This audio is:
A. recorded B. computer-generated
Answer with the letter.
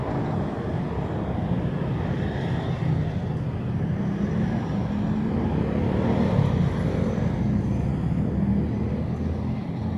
A